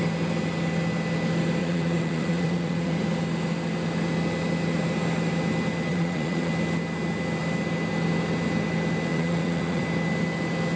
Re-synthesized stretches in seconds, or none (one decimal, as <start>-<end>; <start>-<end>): 1.6-2.9; 5.9-6.5; 9.1-9.8